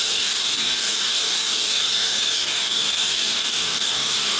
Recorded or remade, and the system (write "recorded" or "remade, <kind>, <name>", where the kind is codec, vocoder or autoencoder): remade, codec, DAC